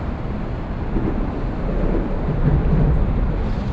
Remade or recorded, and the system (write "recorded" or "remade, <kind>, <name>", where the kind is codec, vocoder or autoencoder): recorded